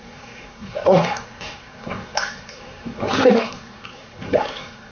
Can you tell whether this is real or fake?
fake